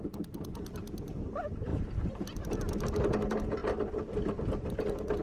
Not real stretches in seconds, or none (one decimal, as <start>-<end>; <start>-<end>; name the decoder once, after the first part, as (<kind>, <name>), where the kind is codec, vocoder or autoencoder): 1.7-2.7 (vocoder, BigVGAN v2); 3.6-4.3